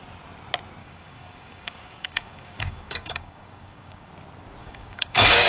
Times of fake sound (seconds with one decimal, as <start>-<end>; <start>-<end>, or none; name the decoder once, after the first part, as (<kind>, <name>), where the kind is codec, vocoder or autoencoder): 0.8-4.1 (codec, DAC); 4.6-5.5